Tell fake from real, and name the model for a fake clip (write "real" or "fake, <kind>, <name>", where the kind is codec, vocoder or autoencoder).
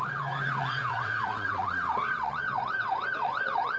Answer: fake, vocoder, WaveNeXt